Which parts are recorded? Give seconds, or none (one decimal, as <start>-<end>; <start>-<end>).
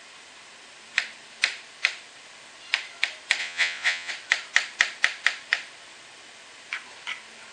0.0-3.4; 4.1-7.5